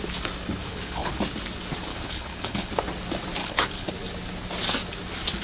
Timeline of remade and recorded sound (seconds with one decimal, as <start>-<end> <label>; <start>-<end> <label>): 0.0-0.6 recorded; 0.6-1.2 remade; 1.2-1.9 recorded; 1.9-2.7 remade; 2.7-3.4 recorded; 3.4-3.9 remade; 3.9-5.4 recorded